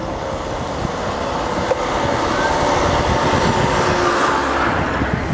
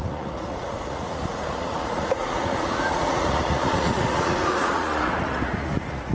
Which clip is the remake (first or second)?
second